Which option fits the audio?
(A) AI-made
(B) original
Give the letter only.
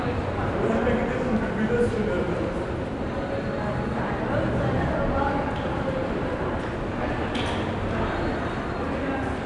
B